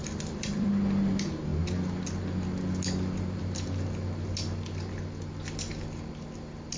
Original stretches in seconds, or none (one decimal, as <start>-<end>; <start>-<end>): 0.7-6.8

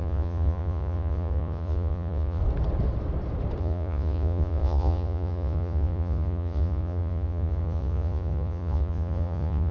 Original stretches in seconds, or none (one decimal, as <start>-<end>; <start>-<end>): 2.4-3.6